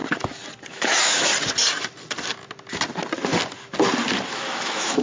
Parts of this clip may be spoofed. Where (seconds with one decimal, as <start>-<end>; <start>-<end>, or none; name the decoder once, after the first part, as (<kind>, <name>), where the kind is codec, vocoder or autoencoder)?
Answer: 0.7-1.3 (autoencoder, DAC-VAE); 4.3-5.0